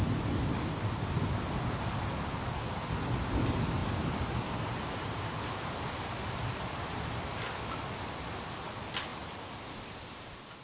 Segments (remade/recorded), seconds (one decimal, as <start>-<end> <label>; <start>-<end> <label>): 0.0-10.6 recorded